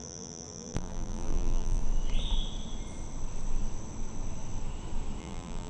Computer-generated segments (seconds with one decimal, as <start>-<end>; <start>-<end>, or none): 0.0-1.8; 5.2-5.7